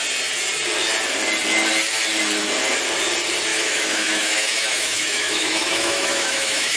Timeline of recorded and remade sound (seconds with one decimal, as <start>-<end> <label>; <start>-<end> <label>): 0.0-3.5 recorded; 3.5-6.8 remade